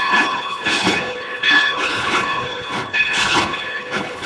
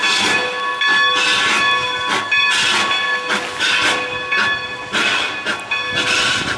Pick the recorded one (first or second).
second